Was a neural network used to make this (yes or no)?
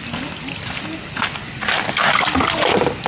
no